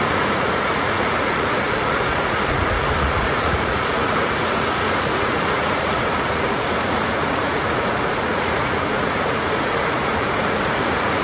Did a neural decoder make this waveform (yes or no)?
yes